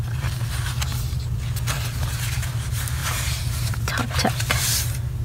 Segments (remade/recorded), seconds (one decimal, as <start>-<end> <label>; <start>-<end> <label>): 0.0-3.0 recorded; 3.0-4.6 remade; 4.6-5.2 recorded